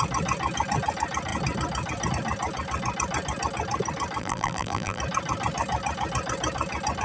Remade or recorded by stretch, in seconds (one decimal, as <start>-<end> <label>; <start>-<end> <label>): 0.0-4.2 recorded; 4.2-5.0 remade; 5.0-7.0 recorded